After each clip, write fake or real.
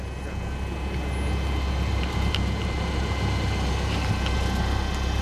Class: real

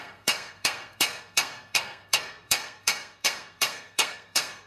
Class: fake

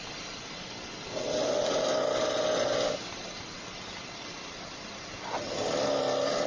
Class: real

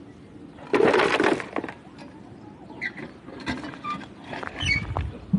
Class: real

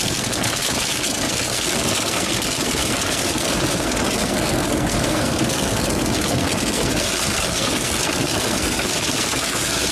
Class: fake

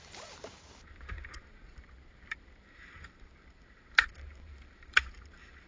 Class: fake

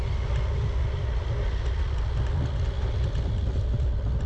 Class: real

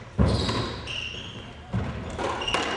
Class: real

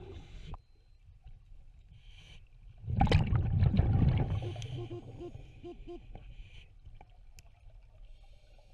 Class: real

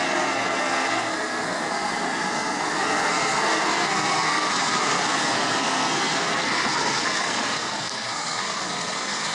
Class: fake